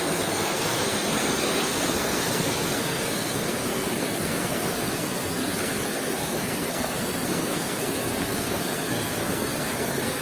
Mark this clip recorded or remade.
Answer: remade